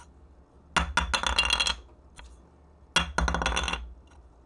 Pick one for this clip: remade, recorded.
recorded